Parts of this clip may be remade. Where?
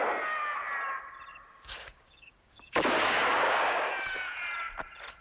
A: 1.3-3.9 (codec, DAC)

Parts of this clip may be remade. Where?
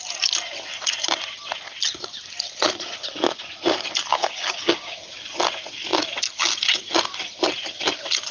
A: 4.1-5.0 (codec, DAC)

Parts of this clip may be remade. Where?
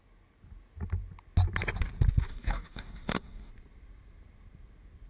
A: 2.3-3.5 (codec, DAC)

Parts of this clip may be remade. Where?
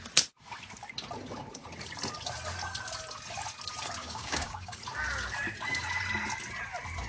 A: 4.0-4.8 (codec, DAC)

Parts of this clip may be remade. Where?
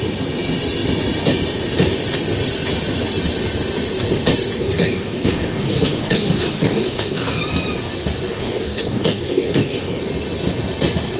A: 4.6-7.4 (codec, DAC); 8.3-10.0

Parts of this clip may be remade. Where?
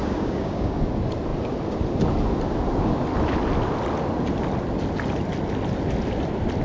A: 0.0-0.8 (codec, DAC)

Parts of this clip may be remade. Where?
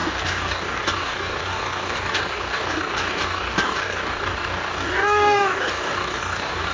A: 0.0-6.7 (codec, DAC)